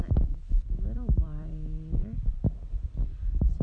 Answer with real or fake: fake